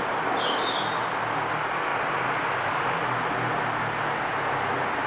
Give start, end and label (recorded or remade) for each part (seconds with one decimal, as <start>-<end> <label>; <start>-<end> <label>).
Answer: 0.0-5.1 recorded